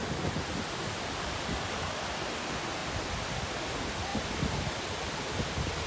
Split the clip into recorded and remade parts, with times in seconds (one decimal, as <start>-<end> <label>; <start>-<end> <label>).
0.0-2.8 recorded; 2.8-3.4 remade; 3.4-4.1 recorded; 4.1-4.6 remade; 4.6-5.9 recorded